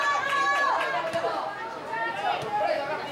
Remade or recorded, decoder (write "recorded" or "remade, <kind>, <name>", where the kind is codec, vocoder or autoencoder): recorded